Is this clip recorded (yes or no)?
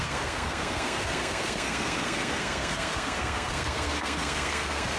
no